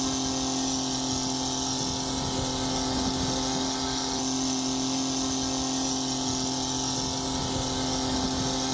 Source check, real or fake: real